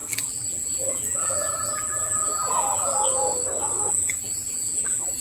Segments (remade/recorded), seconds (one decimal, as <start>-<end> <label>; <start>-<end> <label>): 0.0-3.0 remade; 3.0-3.9 recorded; 3.9-5.2 remade